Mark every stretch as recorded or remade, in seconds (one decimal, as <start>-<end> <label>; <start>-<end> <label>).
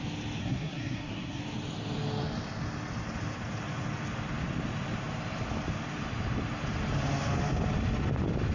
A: 0.0-0.4 recorded; 0.4-1.4 remade; 1.4-8.5 recorded